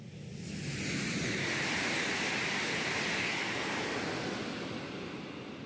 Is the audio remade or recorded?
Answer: recorded